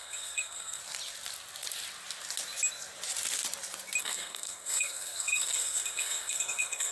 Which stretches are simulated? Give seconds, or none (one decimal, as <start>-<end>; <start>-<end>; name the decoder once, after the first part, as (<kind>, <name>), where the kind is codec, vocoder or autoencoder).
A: 0.0-0.8 (codec, SNAC); 4.0-6.9